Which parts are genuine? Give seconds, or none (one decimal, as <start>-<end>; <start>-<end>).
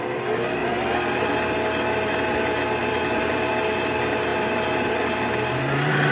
0.0-0.6; 1.3-2.8; 3.5-4.3